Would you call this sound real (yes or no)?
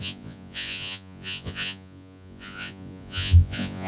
no